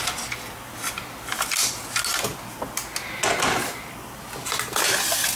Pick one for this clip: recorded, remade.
recorded